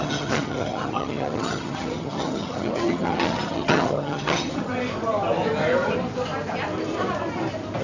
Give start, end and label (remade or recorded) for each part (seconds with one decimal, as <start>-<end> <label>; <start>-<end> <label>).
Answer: 0.0-4.7 remade; 4.7-7.8 recorded